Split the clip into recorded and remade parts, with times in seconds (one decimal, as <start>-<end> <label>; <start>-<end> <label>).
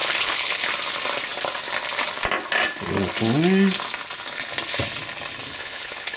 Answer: 0.0-0.6 remade; 0.6-5.4 recorded; 5.4-6.2 remade